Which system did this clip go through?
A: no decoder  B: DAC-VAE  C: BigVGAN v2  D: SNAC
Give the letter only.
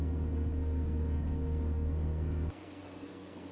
D